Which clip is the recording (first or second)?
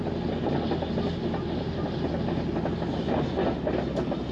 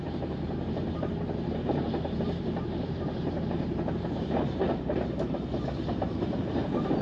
first